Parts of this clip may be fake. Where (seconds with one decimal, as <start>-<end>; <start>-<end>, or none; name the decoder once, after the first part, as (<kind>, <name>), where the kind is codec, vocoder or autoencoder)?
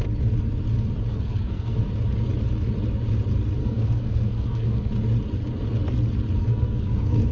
1.1-1.9 (codec, SNAC); 3.6-4.9; 6.4-7.3